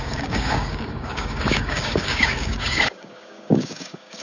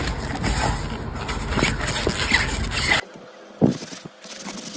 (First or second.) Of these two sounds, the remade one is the first